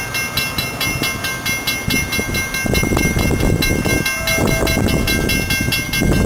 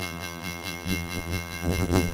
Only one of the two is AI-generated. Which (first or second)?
second